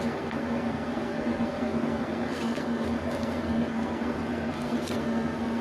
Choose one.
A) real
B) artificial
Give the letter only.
B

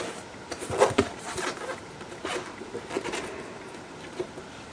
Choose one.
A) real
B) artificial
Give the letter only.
A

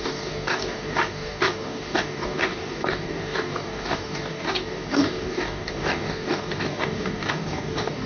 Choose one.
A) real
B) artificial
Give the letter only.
B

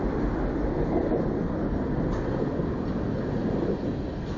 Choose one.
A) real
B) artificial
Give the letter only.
A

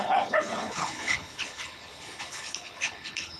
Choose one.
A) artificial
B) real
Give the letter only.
A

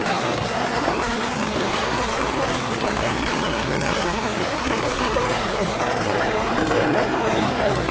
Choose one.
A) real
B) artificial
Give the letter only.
B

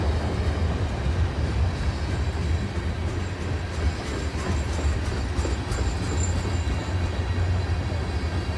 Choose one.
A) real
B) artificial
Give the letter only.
A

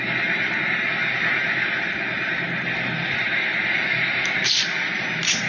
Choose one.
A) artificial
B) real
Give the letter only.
B